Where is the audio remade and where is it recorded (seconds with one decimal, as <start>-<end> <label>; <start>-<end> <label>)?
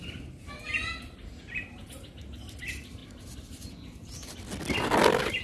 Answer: 0.0-5.4 recorded